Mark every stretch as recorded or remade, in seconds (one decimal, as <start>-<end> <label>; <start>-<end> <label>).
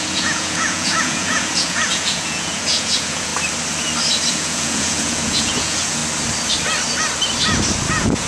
0.0-3.3 remade; 3.3-4.3 recorded; 4.3-6.0 remade; 6.0-7.9 recorded; 7.9-8.3 remade